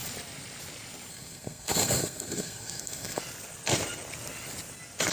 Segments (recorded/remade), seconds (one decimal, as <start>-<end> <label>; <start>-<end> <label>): 0.0-1.1 recorded; 1.1-3.2 remade; 3.2-5.1 recorded